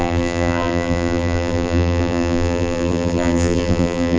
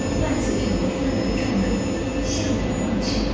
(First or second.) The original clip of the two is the second